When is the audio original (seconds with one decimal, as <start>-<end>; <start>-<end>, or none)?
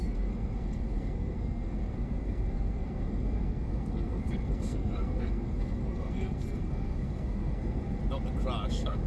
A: 8.0-8.7